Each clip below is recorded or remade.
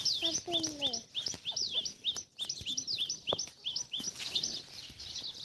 recorded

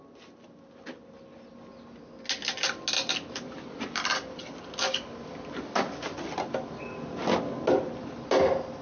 recorded